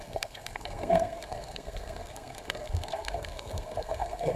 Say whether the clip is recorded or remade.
remade